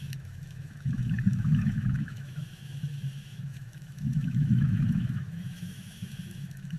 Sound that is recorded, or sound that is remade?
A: remade